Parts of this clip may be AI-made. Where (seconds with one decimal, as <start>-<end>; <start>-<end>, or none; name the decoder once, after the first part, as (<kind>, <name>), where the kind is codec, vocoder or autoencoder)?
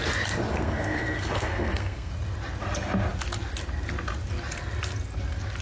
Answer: 0.5-2.1 (codec, SNAC)